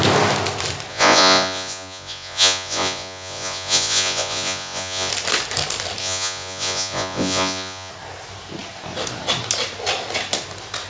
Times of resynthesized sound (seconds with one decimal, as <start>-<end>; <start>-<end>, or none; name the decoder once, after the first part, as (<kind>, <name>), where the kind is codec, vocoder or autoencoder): 0.9-5.1 (vocoder, Vocos); 6.0-7.9